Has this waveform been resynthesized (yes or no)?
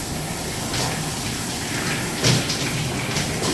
no